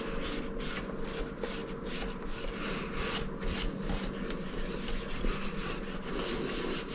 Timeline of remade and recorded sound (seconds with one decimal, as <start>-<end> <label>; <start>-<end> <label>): 0.0-6.9 recorded